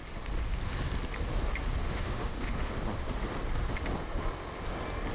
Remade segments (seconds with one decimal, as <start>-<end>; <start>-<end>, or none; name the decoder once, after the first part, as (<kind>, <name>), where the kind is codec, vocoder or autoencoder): 1.8-2.7 (autoencoder, DAC-VAE)